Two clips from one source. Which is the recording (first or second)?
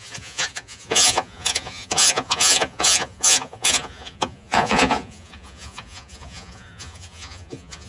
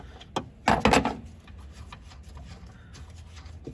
second